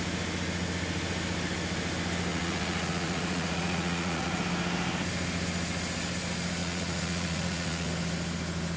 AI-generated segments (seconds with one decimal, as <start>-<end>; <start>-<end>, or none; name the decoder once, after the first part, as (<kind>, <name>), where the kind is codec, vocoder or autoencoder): 2.3-4.4 (vocoder, Vocos); 6.6-7.9